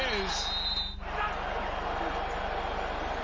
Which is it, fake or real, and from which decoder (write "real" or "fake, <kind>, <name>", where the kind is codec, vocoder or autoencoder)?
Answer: real